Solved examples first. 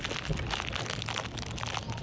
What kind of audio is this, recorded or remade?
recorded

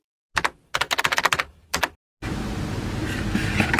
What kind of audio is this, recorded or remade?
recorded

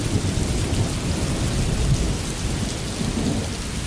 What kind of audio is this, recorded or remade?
recorded